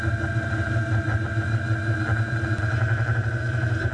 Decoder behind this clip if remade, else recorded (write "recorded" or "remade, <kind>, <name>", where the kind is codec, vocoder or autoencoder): remade, vocoder, BigVGAN v2